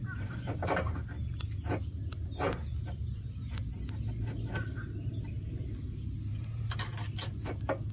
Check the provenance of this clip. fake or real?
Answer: real